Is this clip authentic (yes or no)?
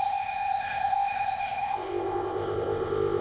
no